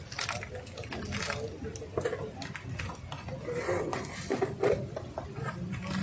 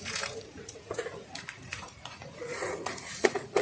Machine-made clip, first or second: second